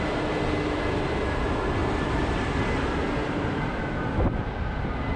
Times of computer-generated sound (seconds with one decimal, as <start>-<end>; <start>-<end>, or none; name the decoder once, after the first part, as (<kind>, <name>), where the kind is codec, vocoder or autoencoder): 1.8-2.5 (vocoder, BigVGAN v2); 3.2-3.8

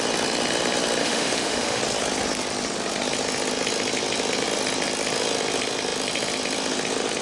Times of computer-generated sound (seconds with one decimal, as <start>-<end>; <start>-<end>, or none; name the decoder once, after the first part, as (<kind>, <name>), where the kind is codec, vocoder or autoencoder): 1.0-1.8 (autoencoder, DAC-VAE)

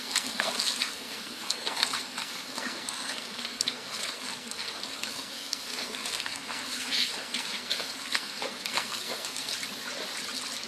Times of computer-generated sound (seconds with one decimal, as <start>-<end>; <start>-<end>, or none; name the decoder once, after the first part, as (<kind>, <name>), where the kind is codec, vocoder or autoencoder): 0.0-9.5 (codec, SNAC)

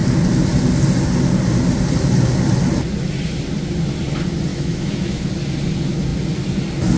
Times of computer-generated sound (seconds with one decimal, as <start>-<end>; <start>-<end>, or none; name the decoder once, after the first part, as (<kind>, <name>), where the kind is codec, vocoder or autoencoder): 4.5-5.3 (autoencoder, DAC-VAE)